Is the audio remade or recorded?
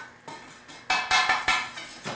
recorded